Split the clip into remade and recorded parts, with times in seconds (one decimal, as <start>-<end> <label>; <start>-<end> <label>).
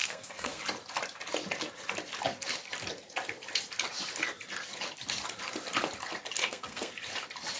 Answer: 0.0-0.6 remade; 0.6-6.4 recorded; 6.4-6.9 remade; 6.9-7.6 recorded